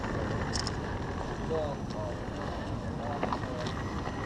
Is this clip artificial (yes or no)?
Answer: no